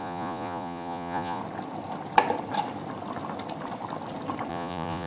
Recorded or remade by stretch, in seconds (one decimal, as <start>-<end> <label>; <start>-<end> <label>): 0.0-1.4 remade; 1.4-4.5 recorded; 4.5-5.1 remade